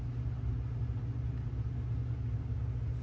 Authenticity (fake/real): real